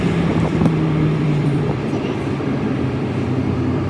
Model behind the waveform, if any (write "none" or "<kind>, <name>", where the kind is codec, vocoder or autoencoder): vocoder, BigVGAN v2